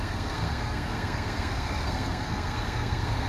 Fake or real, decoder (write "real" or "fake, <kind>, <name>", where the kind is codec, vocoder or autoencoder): fake, codec, SNAC